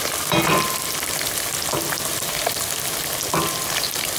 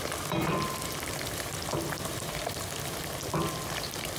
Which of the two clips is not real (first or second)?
second